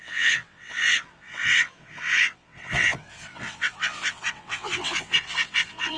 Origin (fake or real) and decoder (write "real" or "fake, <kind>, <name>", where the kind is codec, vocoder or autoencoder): fake, vocoder, WaveNeXt